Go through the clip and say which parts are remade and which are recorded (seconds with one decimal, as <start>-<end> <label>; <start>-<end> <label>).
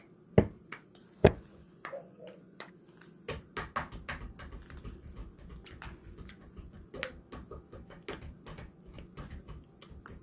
0.0-1.2 recorded; 1.2-2.7 remade; 2.7-5.2 recorded; 5.2-6.9 remade; 6.9-8.5 recorded; 8.5-9.3 remade; 9.3-10.2 recorded